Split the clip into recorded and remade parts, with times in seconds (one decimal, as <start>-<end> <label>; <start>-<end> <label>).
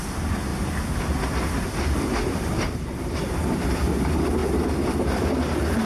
0.0-0.5 remade; 0.5-1.6 recorded; 1.6-5.9 remade